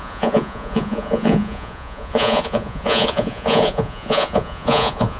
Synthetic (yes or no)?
yes